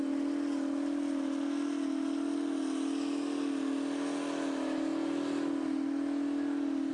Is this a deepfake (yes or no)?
no